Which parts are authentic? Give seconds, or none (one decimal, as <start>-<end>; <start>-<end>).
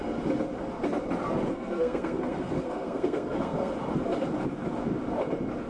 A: 0.0-1.5; 3.7-5.7